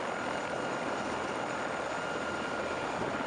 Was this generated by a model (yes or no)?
no